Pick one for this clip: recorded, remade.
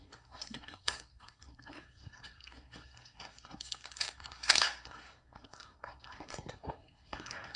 remade